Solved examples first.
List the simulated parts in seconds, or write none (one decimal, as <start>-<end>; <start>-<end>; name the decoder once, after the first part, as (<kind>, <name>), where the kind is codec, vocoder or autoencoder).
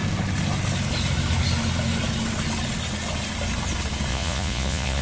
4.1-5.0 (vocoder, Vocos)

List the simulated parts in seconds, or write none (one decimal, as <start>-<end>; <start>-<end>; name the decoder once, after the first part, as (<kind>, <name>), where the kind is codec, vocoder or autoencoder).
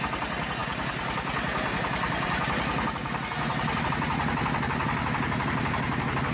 none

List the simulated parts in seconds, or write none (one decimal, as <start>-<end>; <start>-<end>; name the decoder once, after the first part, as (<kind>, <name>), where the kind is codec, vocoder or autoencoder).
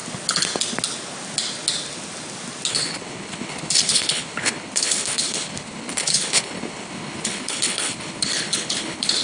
2.7-9.2 (codec, HILCodec)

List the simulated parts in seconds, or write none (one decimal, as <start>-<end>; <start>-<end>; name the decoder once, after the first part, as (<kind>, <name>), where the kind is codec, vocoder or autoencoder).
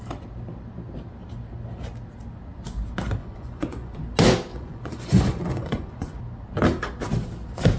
3.2-4.0 (vocoder, Vocos); 4.5-6.2